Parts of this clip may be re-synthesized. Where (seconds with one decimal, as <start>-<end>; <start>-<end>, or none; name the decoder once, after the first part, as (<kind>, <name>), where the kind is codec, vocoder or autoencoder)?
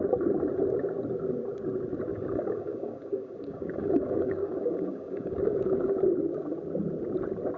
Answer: 2.1-5.9 (codec, DAC)